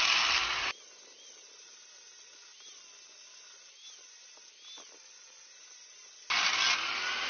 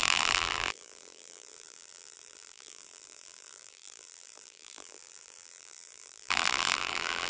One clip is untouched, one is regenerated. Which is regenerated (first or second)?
second